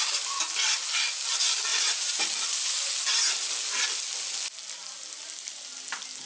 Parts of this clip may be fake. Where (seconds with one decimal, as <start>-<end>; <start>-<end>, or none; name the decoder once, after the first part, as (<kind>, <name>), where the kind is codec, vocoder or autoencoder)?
1.7-2.2 (vocoder, BigVGAN v2)